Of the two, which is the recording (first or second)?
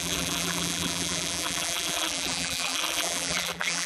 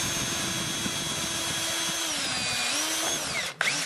second